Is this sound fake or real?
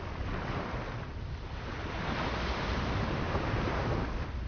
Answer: real